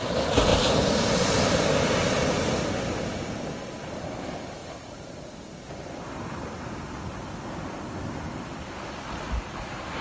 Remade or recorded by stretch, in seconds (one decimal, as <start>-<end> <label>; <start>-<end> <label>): 0.0-10.0 recorded